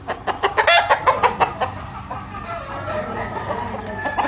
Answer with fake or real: real